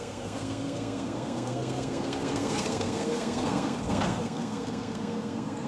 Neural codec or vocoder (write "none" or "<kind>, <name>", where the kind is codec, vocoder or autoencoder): codec, SNAC